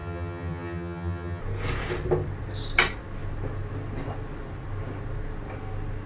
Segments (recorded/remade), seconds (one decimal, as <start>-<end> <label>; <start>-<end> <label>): 0.0-1.4 remade; 1.4-6.1 recorded